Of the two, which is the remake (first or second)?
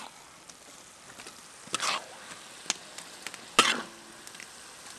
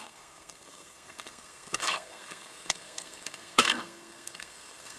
second